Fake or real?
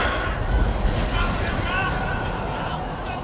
fake